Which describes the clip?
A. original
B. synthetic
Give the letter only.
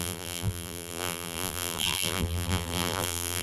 B